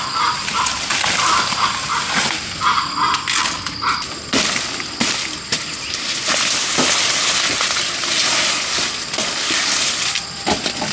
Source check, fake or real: real